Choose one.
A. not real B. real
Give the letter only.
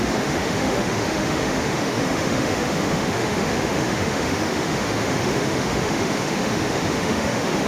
A